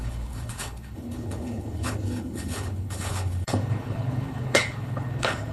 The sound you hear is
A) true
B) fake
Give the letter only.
B